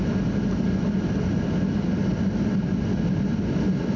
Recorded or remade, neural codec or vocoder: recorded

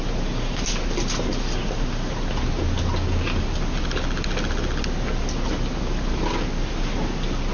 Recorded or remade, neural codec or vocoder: recorded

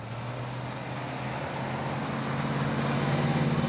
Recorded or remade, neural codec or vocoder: recorded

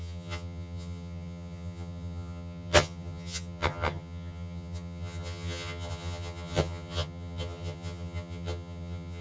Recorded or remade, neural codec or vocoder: remade, vocoder, HiFi-GAN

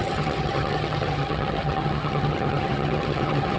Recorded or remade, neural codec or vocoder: remade, vocoder, HiFi-GAN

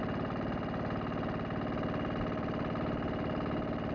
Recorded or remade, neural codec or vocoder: recorded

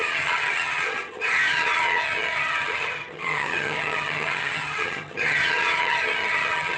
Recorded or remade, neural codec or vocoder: remade, vocoder, HiFi-GAN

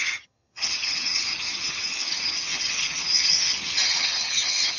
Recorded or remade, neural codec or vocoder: remade, vocoder, HiFi-GAN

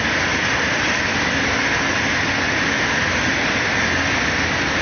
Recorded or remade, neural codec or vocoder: recorded